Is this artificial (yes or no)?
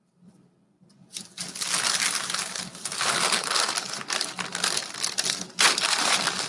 no